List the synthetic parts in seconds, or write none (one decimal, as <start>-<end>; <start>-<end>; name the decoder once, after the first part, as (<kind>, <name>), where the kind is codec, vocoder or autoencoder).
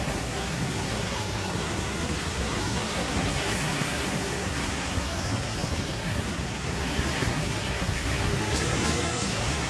0.0-9.7 (codec, SNAC)